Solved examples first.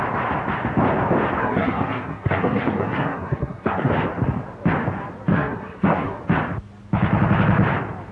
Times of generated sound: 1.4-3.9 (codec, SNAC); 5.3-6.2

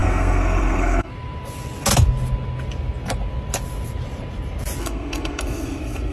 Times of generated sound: 0.0-1.1 (codec, SNAC); 4.8-6.1

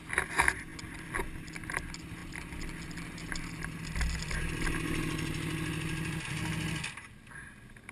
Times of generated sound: none

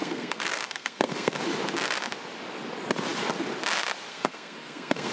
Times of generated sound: 0.0-1.4 (codec, SNAC); 4.1-5.1